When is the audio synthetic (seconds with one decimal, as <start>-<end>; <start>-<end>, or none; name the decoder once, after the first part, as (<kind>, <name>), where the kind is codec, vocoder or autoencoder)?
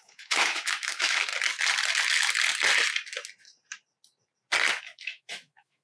0.0-1.3 (autoencoder, DAC-VAE); 4.8-5.8